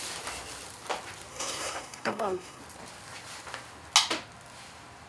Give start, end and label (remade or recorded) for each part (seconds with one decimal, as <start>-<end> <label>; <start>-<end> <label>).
0.0-1.3 recorded; 1.3-2.6 remade; 2.6-5.1 recorded